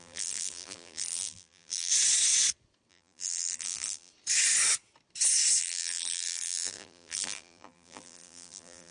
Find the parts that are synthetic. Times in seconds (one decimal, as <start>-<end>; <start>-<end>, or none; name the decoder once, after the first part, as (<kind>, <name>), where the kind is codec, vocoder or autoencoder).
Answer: 0.0-1.9 (vocoder, BigVGAN v2); 2.9-4.1; 5.6-8.9